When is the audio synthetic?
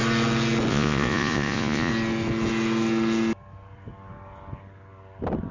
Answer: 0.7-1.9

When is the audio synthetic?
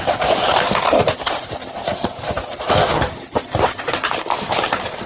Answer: none